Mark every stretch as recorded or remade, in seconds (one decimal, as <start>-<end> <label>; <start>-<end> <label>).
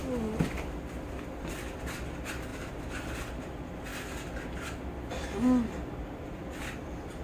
0.0-2.5 recorded; 2.5-3.5 remade; 3.5-7.2 recorded